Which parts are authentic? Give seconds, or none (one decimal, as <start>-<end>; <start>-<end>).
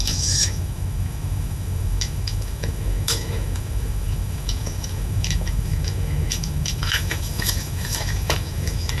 none